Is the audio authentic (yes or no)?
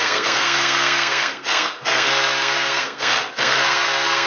no